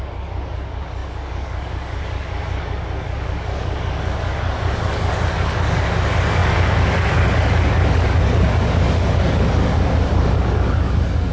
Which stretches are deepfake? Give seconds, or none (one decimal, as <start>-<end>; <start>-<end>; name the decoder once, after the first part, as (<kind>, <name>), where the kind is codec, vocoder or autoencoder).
0.0-11.3 (codec, DAC)